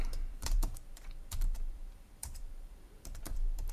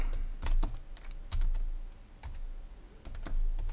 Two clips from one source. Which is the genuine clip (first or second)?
second